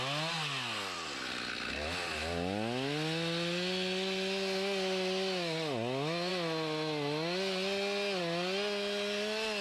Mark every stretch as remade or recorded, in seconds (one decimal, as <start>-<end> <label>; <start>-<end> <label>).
0.0-9.6 recorded